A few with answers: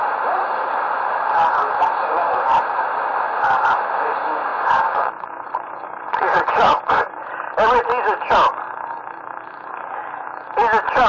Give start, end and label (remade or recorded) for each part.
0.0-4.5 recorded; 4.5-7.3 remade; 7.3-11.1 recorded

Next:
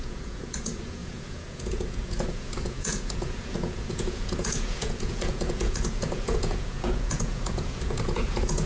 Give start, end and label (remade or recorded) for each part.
0.0-8.7 remade

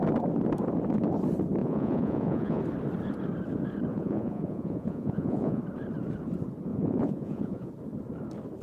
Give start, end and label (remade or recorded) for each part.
0.0-1.6 recorded; 1.6-2.6 remade; 2.6-3.9 recorded; 3.9-5.6 remade; 5.6-6.7 recorded; 6.7-7.7 remade; 7.7-8.6 recorded

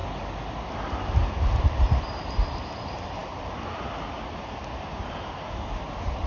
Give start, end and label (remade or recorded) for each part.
0.0-6.3 recorded